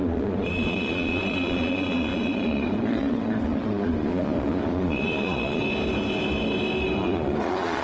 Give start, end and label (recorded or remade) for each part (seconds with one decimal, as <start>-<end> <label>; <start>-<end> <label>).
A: 0.0-5.6 remade; 5.6-7.0 recorded; 7.0-7.8 remade